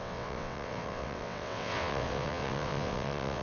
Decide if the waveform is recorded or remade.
remade